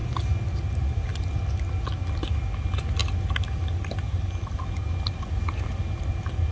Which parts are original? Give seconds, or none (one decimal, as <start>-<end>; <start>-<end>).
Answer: 0.0-6.5